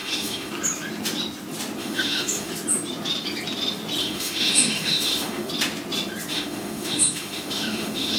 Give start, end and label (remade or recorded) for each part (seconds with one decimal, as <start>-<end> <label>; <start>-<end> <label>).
0.0-0.5 remade; 0.5-1.8 recorded; 1.8-2.5 remade; 2.5-4.0 recorded; 4.0-5.5 remade; 5.5-6.3 recorded; 6.3-8.2 remade